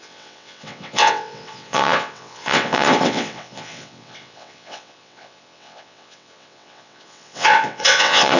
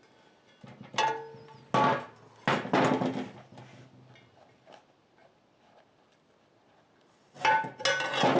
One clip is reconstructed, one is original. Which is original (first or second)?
second